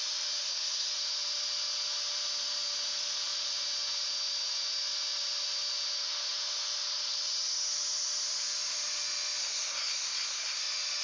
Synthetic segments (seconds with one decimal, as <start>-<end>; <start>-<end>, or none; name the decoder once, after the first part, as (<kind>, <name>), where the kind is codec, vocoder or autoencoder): 0.4-0.9 (codec, SNAC); 9.4-10.6